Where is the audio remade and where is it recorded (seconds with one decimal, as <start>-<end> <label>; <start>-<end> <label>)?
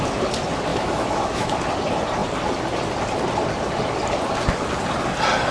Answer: 0.0-0.7 recorded; 0.7-1.5 remade; 1.5-5.5 recorded